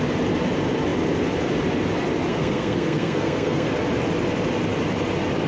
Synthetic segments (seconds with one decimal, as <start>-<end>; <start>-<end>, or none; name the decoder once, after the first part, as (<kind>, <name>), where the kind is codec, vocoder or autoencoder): 2.3-3.7 (codec, SNAC)